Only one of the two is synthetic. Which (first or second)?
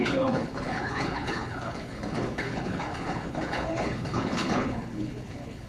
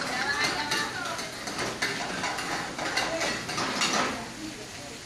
first